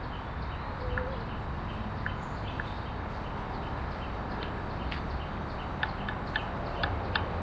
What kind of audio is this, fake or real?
real